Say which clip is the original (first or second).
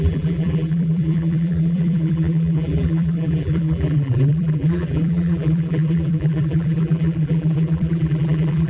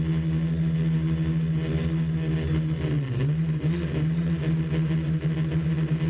second